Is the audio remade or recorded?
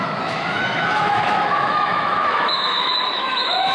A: remade